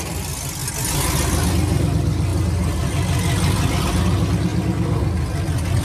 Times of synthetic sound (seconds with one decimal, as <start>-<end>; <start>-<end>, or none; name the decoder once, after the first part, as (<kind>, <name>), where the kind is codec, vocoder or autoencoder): none